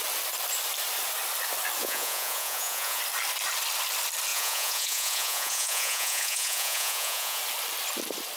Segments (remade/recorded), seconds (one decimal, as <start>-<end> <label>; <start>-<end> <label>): 0.0-1.8 recorded; 1.8-3.0 remade; 3.0-4.3 recorded; 4.3-7.4 remade; 7.4-8.4 recorded